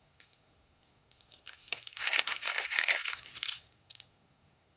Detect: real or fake fake